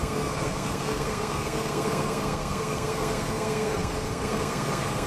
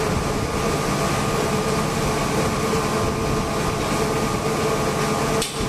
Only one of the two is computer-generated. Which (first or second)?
first